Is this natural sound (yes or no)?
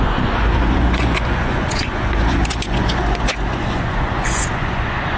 no